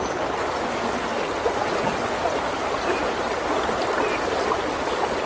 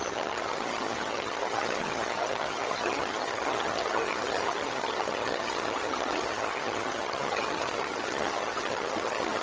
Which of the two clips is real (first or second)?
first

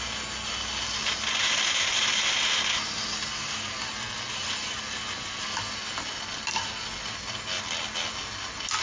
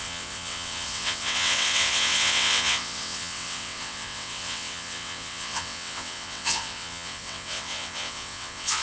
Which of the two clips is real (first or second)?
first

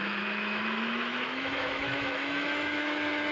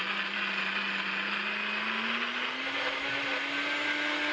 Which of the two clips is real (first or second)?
second